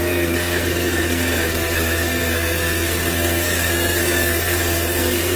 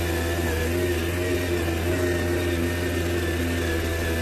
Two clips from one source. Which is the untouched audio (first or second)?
second